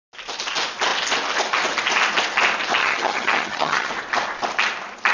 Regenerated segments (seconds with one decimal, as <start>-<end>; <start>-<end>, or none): 2.8-3.9